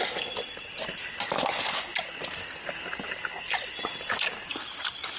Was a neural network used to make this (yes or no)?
no